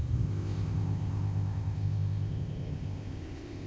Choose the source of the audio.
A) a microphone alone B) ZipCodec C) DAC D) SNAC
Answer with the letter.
B